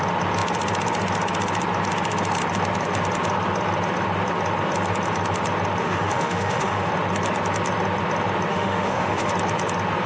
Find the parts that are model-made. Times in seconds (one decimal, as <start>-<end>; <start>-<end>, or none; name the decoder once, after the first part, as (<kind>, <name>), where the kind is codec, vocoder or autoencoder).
5.8-6.9 (autoencoder, DAC-VAE); 8.5-9.3